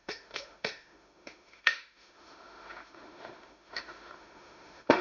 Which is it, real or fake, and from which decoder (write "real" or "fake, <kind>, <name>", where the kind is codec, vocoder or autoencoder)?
fake, autoencoder, DAC-VAE